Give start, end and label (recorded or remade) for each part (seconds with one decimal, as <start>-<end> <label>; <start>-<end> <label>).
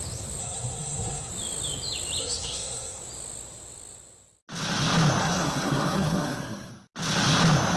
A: 0.0-0.4 recorded; 0.4-1.3 remade; 1.3-2.2 recorded; 2.2-3.0 remade; 3.0-5.2 recorded; 5.2-6.7 remade; 6.7-7.8 recorded